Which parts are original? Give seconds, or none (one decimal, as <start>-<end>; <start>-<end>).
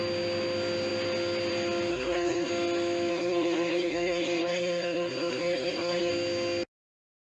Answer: 0.0-1.9; 2.5-3.1; 6.1-7.4